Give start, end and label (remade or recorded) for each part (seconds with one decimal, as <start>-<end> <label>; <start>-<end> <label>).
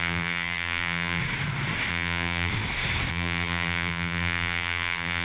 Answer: 0.0-1.2 remade; 1.2-1.9 recorded; 1.9-2.5 remade; 2.5-3.1 recorded; 3.1-5.2 remade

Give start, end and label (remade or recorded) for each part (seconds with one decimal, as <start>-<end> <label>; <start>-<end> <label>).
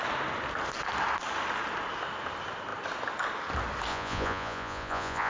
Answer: 0.0-3.9 recorded; 3.9-5.3 remade